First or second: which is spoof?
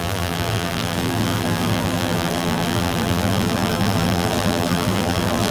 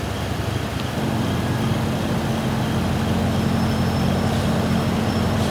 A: first